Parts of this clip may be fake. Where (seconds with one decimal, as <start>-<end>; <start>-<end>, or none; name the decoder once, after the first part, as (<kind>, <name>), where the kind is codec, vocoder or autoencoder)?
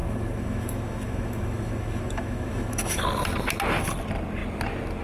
0.0-3.0 (autoencoder, DAC-VAE)